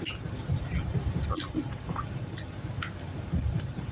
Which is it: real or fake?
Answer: fake